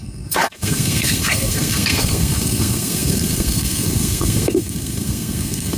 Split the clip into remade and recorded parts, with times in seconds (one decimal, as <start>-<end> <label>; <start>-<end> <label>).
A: 0.0-5.8 remade